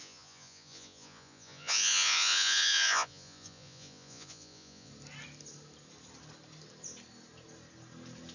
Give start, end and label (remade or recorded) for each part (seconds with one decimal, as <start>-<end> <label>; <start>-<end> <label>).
0.0-4.9 remade; 4.9-8.3 recorded